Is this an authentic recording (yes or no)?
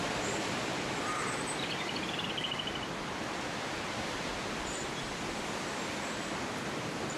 no